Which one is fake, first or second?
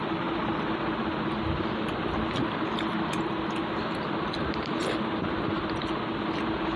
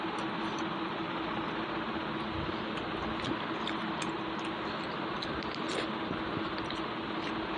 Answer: first